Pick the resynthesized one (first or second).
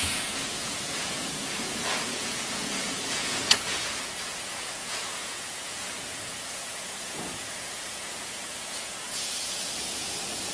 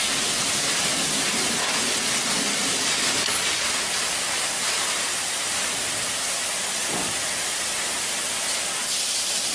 first